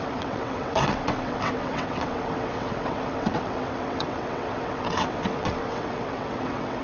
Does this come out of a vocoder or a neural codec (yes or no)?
yes